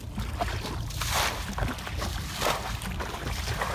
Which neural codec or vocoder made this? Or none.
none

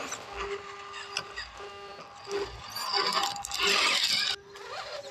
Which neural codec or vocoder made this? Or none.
none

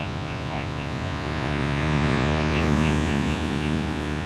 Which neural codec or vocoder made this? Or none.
vocoder, Vocos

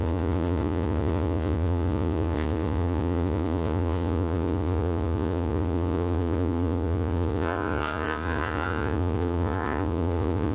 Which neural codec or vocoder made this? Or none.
vocoder, Vocos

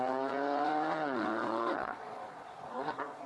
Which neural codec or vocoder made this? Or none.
vocoder, Vocos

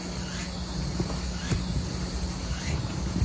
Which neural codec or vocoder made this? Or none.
none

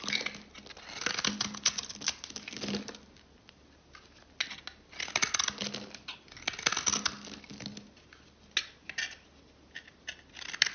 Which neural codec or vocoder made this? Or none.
none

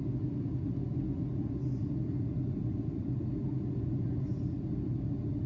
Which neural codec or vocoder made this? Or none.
none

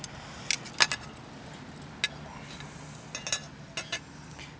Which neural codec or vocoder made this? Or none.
none